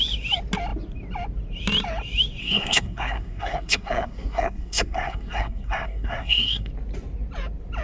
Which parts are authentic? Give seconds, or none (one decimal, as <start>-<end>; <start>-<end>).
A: 0.0-2.4; 6.7-7.8